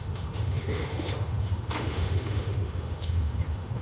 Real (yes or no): no